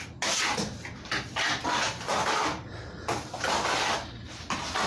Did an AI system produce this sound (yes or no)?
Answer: no